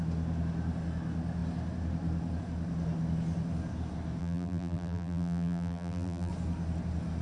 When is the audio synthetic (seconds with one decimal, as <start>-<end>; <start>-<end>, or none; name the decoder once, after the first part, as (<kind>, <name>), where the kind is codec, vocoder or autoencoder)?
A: 4.2-6.3 (vocoder, BigVGAN v2)